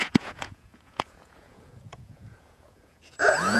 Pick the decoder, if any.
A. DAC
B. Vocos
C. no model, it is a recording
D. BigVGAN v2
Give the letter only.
B